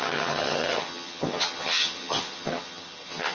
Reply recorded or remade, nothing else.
remade